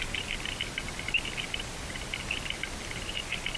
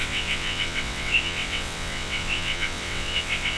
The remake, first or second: second